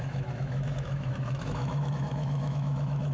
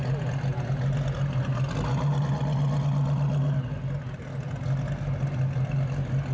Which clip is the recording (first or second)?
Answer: second